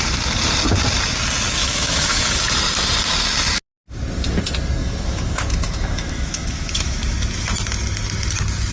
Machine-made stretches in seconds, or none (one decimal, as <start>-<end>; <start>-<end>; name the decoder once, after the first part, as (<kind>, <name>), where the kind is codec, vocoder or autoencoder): 1.6-2.2 (autoencoder, DAC-VAE); 4.8-7.0